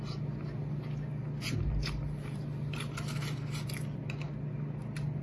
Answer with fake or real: real